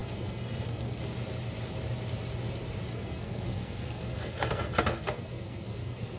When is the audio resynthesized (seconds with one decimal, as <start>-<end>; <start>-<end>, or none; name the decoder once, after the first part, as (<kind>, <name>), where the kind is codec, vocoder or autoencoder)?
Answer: 0.0-1.0 (codec, SNAC); 2.9-6.2